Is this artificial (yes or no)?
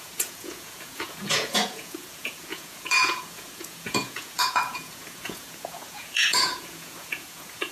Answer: yes